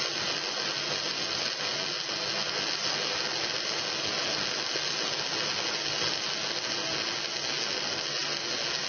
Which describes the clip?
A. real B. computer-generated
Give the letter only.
A